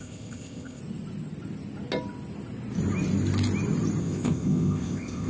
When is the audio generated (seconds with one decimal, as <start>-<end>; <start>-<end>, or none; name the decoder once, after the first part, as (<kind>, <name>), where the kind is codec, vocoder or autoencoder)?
0.0-0.8 (codec, ZipCodec); 4.0-5.3